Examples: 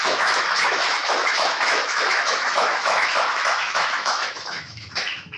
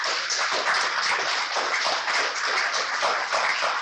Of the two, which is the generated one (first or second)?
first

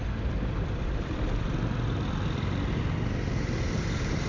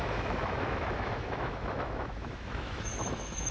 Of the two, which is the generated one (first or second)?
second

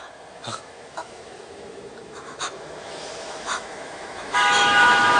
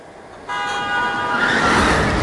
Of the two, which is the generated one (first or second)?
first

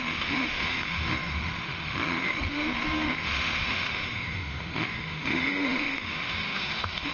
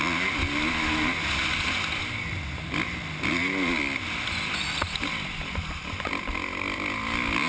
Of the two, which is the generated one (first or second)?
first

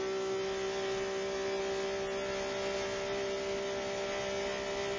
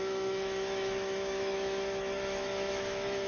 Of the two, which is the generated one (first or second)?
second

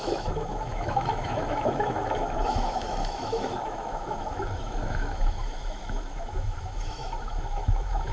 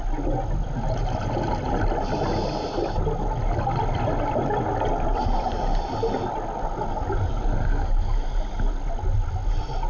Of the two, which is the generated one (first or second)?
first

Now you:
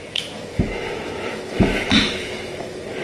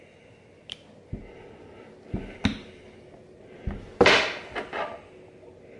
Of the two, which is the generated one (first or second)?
first